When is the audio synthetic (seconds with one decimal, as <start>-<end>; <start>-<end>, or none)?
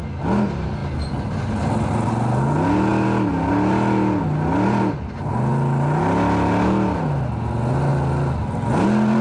none